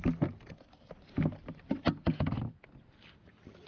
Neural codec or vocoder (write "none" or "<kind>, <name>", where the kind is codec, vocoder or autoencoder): none